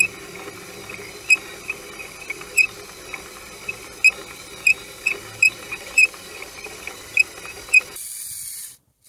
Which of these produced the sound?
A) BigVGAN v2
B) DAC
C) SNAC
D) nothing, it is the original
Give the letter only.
D